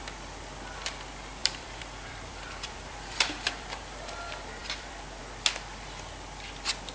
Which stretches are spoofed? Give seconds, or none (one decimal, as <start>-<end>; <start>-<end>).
1.4-3.8; 4.6-5.2